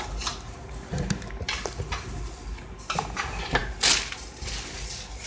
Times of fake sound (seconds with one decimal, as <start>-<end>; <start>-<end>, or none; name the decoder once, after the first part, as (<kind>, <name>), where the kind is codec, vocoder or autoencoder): none